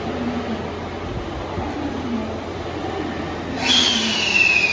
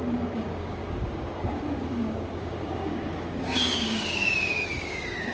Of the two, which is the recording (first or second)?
first